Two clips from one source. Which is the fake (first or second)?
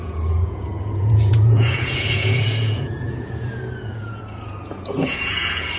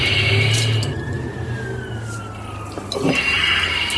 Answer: first